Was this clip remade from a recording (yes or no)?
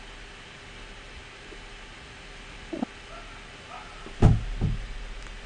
no